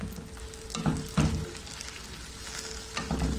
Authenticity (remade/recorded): recorded